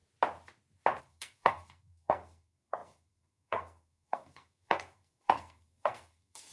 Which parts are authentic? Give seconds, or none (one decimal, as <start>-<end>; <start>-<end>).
0.0-1.0